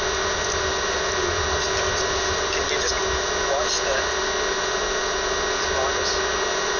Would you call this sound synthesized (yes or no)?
no